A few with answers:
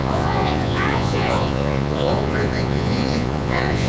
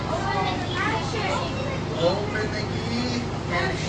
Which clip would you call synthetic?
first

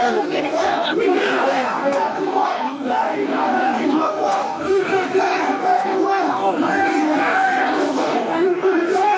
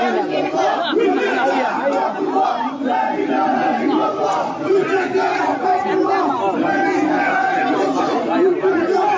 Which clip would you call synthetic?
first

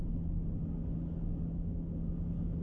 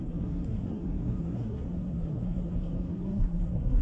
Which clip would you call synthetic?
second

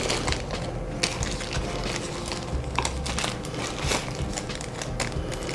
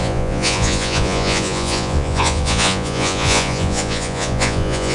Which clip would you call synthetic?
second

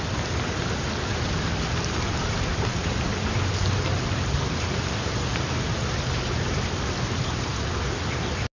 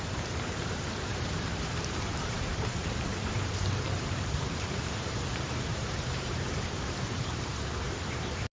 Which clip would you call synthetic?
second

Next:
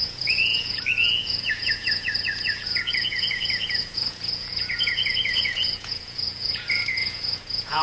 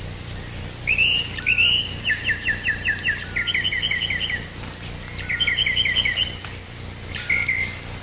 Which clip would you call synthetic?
first